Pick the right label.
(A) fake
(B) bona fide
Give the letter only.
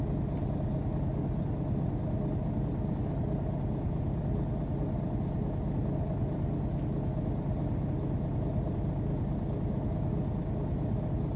B